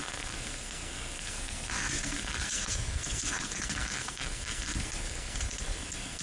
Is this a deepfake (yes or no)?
yes